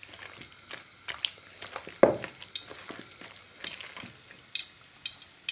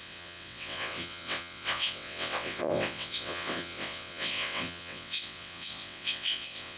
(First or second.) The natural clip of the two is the first